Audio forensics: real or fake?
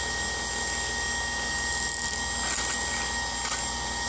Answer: real